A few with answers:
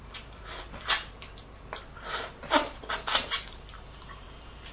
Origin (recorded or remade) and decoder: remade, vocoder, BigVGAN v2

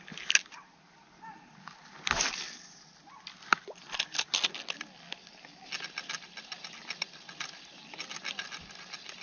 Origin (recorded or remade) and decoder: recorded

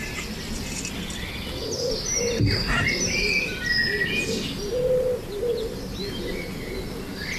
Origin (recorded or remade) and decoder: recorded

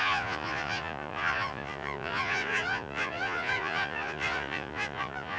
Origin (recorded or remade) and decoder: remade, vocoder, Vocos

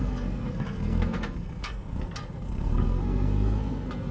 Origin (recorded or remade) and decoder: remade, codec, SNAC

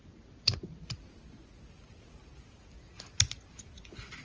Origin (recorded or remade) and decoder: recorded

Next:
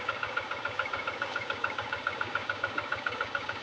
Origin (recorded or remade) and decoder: remade, codec, DAC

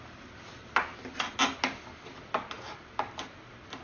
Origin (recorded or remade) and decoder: recorded